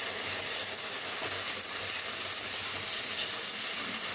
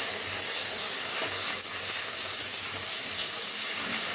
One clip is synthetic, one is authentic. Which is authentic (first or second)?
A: first